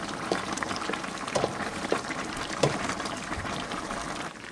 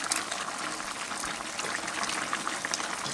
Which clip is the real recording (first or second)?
second